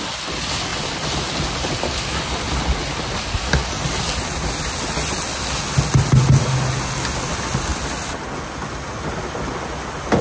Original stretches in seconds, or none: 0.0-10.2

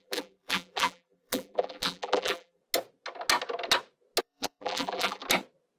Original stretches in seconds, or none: 2.6-4.2; 5.2-5.8